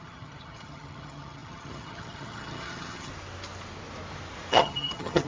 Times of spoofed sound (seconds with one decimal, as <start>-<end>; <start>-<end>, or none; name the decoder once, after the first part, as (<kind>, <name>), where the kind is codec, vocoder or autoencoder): 0.0-3.1 (vocoder, HiFi-GAN); 4.5-5.3